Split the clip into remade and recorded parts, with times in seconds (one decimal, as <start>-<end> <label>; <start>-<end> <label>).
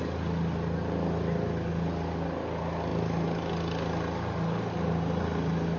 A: 0.0-5.8 recorded